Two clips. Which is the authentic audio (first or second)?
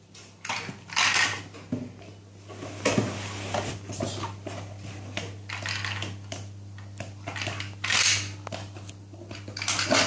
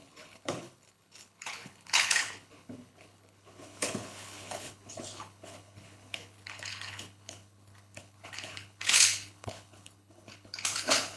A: first